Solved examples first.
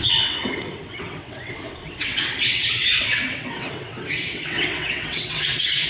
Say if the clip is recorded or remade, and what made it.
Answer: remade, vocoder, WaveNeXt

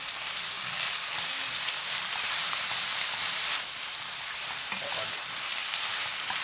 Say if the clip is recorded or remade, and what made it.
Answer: remade, vocoder, BigVGAN v2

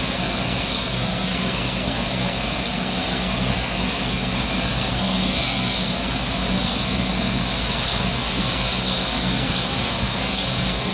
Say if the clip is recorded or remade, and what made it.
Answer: remade, codec, SNAC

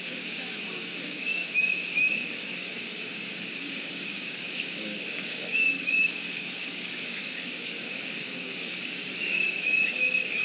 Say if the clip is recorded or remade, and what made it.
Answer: remade, codec, DAC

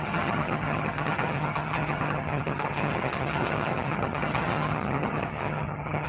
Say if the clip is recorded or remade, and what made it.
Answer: remade, vocoder, HiFi-GAN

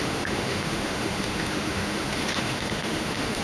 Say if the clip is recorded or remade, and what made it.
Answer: remade, autoencoder, DAC-VAE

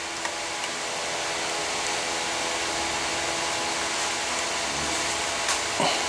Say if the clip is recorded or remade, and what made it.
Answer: recorded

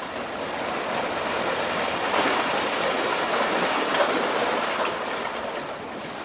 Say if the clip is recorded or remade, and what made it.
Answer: remade, vocoder, BigVGAN v2